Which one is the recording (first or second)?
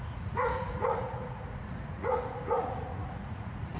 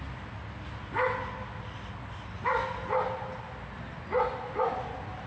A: second